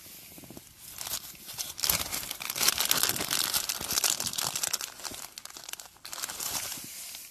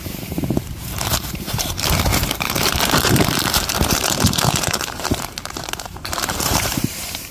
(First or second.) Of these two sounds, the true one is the first